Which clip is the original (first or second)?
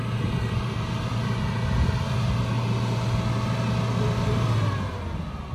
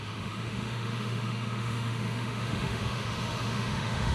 first